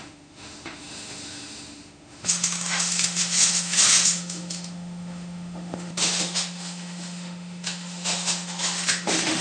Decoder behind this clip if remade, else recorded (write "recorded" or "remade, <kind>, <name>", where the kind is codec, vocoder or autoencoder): remade, autoencoder, DAC-VAE